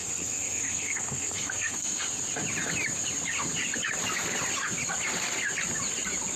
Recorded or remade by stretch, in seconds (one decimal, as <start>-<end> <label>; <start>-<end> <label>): 0.0-2.0 remade; 2.0-6.4 recorded